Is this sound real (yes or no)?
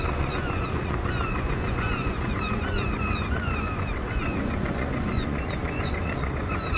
no